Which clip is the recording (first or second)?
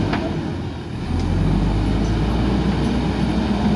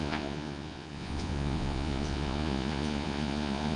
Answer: first